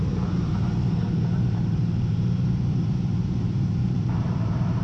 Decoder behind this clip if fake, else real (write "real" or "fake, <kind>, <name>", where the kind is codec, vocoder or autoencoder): fake, vocoder, BigVGAN v2